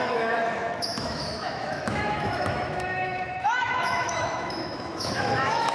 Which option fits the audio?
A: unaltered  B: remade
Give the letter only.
B